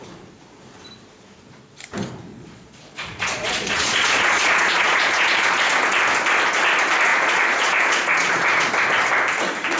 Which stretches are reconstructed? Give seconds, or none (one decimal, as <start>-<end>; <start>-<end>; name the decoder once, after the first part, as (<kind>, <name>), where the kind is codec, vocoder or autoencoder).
2.3-5.6 (vocoder, Vocos); 7.1-8.7